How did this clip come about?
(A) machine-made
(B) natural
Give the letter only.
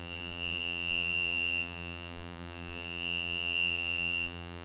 A